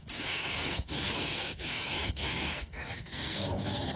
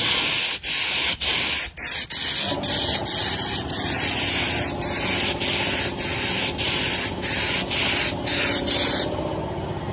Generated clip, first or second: first